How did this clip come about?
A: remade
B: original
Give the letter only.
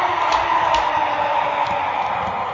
B